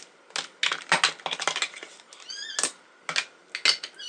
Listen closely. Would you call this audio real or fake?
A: real